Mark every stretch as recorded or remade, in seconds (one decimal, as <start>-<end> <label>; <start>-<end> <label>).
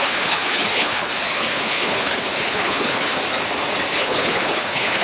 0.0-3.2 remade; 3.2-3.9 recorded; 3.9-5.0 remade